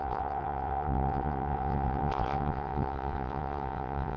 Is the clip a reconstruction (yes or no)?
yes